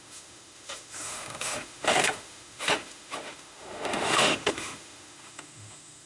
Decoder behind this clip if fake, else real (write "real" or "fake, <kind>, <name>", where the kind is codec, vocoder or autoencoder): fake, autoencoder, DAC-VAE